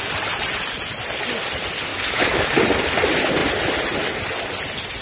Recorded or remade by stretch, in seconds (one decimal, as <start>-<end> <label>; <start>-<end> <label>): 0.0-1.9 recorded; 1.9-2.5 remade; 2.5-5.0 recorded